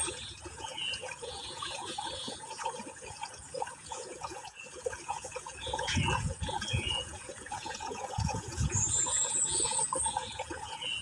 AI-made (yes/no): yes